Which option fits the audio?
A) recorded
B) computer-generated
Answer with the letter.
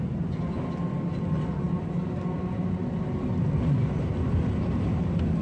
A